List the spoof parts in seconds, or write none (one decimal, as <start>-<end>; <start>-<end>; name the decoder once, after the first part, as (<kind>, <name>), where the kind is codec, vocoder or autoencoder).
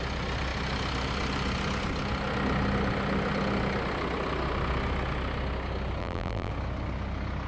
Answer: 6.0-6.5 (vocoder, BigVGAN v2)